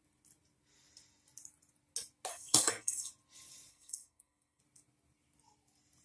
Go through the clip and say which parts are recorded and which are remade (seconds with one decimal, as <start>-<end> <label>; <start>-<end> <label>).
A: 0.0-2.3 recorded; 2.3-3.1 remade; 3.1-3.7 recorded; 3.7-4.6 remade; 4.6-6.0 recorded